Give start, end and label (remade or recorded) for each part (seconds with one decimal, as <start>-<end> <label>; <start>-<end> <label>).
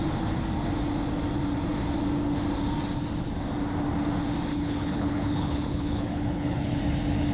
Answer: 0.0-4.5 recorded; 4.5-6.8 remade; 6.8-7.3 recorded